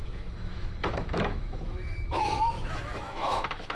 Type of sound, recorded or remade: remade